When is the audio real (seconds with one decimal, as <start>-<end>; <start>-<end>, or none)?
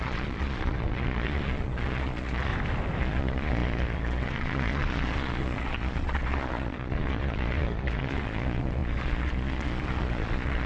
2.5-3.0